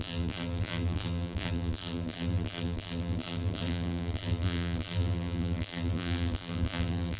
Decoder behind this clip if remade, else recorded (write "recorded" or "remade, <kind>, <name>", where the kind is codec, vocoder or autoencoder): remade, vocoder, BigVGAN v2